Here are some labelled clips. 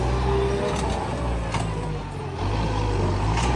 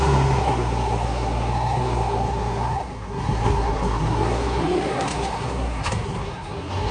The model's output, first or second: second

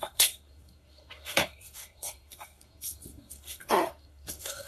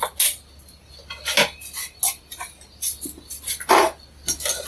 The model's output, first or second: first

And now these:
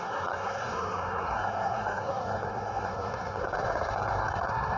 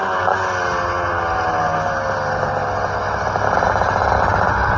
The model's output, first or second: first